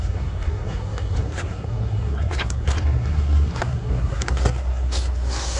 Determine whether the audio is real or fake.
fake